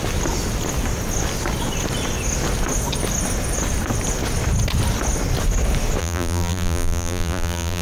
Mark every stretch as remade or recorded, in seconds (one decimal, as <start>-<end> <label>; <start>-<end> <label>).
0.0-6.0 recorded; 6.0-7.8 remade